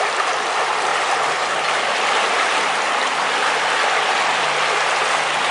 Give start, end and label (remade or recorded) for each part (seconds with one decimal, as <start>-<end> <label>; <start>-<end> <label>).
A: 0.0-5.5 recorded